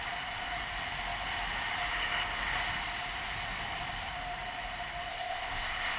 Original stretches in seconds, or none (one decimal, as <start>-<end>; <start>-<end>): 0.0-5.1